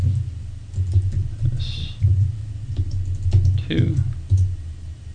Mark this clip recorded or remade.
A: recorded